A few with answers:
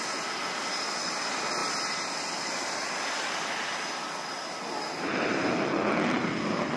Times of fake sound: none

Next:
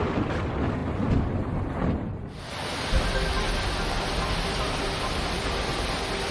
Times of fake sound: none

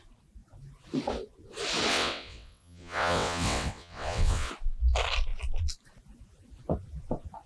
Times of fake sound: 1.9-4.5 (vocoder, WaveNeXt)

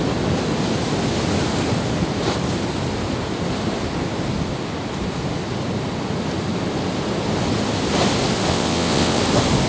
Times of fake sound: 8.5-9.2 (vocoder, WaveNeXt)